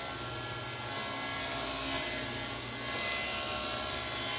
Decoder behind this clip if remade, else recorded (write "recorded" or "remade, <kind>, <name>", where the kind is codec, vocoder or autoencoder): recorded